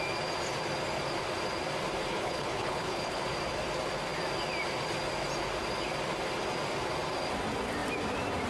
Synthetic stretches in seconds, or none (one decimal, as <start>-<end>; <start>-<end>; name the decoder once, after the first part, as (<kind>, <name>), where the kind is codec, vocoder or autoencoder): 2.1-3.2 (codec, HILCodec)